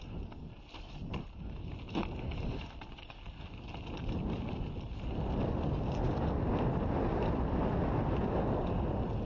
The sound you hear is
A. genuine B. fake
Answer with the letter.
A